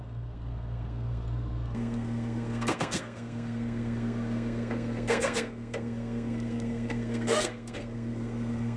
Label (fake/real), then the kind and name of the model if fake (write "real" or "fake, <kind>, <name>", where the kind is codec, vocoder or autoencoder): fake, codec, SNAC